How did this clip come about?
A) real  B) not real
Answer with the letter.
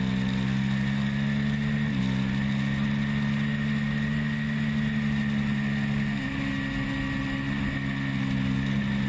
A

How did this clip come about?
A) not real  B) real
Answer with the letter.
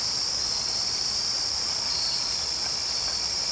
B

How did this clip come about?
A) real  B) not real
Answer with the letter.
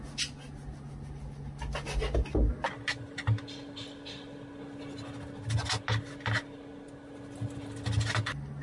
A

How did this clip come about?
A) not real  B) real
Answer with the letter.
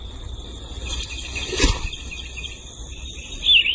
B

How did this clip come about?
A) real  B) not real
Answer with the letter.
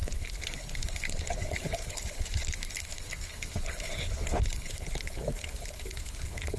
B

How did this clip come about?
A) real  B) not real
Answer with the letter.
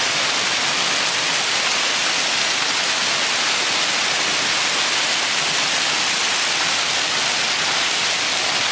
A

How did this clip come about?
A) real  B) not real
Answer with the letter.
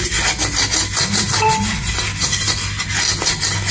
A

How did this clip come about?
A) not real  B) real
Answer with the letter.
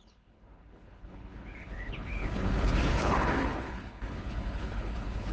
A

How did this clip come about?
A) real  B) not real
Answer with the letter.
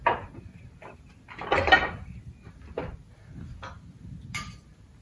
A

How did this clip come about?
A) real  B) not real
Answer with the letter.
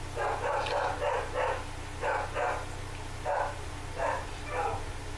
A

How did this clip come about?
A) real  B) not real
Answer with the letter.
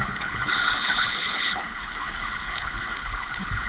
B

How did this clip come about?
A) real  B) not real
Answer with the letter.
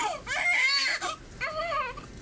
A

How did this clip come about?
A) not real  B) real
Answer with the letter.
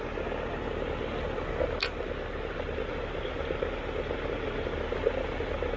B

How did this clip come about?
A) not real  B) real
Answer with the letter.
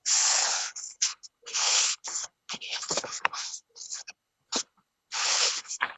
A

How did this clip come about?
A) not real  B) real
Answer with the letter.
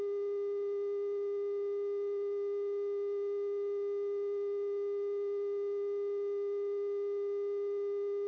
B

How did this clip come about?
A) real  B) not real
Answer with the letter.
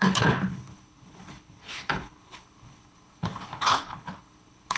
B